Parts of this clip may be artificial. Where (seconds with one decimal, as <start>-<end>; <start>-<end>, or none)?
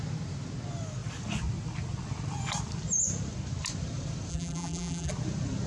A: 4.3-5.1